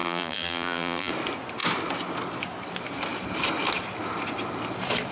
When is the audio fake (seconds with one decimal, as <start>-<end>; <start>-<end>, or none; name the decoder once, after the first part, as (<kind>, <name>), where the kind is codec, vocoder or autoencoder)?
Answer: 0.0-1.1 (vocoder, BigVGAN v2)